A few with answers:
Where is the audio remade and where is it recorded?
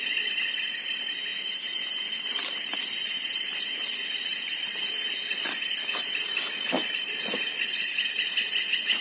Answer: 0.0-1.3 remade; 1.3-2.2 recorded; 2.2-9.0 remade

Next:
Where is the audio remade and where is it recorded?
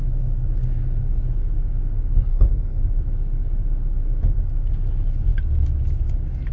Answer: 0.0-2.3 recorded; 2.3-2.8 remade; 2.8-6.5 recorded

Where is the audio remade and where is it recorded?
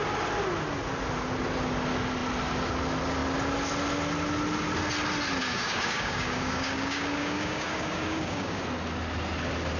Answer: 0.0-5.4 recorded; 5.4-8.6 remade; 8.6-9.8 recorded